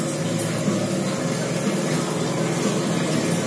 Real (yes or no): yes